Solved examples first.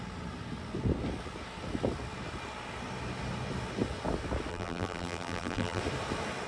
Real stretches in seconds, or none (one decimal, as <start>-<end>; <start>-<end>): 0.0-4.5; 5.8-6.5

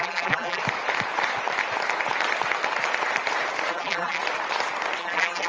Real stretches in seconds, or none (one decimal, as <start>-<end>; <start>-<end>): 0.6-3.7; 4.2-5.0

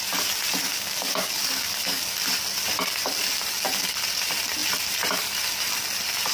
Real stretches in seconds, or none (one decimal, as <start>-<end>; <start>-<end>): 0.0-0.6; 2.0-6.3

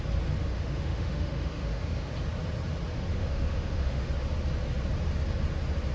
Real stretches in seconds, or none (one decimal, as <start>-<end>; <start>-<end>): 0.0-0.4; 2.1-3.1; 4.1-5.9

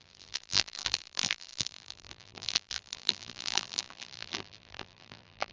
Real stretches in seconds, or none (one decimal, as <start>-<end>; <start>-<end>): none

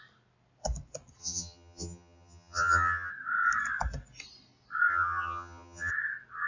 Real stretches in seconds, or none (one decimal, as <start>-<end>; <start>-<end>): 0.0-1.2; 3.1-4.9; 5.9-6.5

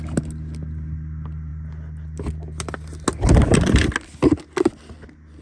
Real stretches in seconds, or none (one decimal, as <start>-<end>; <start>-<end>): 0.0-5.4